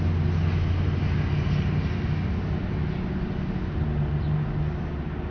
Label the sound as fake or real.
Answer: real